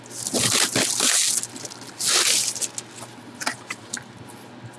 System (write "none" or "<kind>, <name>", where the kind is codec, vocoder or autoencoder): none